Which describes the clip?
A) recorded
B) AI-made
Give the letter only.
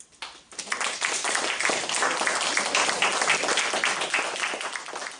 A